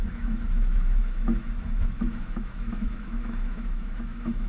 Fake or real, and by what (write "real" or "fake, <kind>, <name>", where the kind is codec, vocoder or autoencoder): fake, autoencoder, DAC-VAE